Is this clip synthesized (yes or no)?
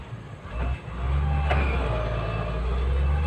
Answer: no